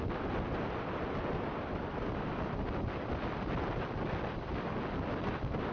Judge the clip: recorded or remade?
recorded